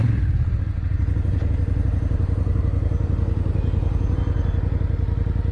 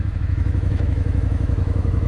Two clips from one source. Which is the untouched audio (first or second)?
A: first